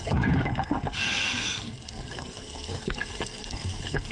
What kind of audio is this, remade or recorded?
remade